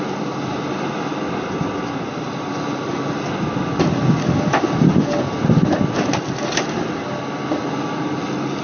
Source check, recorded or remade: recorded